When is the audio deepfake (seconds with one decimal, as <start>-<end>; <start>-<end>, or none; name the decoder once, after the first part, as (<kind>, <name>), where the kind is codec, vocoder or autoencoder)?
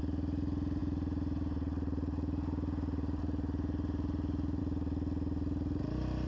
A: 0.8-4.6 (vocoder, BigVGAN v2)